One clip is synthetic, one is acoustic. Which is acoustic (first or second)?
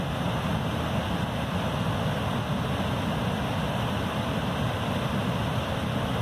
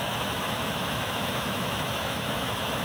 first